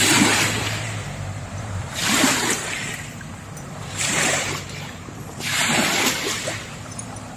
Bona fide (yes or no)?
no